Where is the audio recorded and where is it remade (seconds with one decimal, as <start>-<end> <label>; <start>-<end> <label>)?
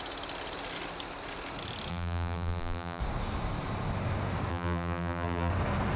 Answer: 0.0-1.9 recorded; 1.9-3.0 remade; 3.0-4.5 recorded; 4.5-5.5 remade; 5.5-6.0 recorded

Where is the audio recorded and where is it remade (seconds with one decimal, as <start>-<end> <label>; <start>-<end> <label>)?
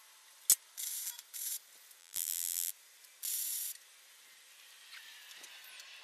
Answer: 0.0-2.0 recorded; 2.0-2.7 remade; 2.7-6.0 recorded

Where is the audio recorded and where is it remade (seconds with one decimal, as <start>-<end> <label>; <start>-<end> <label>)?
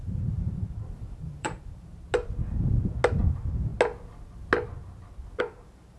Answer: 0.0-1.9 remade; 1.9-3.1 recorded; 3.1-3.7 remade; 3.7-5.4 recorded; 5.4-6.0 remade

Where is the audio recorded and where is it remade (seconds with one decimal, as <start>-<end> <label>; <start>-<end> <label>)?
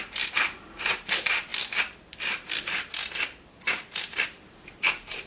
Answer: 0.0-5.3 remade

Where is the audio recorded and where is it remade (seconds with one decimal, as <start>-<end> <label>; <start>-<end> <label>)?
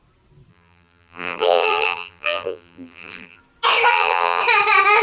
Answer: 0.0-0.5 recorded; 0.5-3.4 remade; 3.4-3.9 recorded; 3.9-4.4 remade; 4.4-5.0 recorded